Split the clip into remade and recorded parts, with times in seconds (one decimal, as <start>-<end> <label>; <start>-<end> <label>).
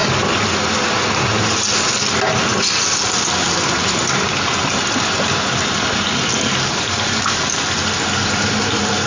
0.0-9.1 recorded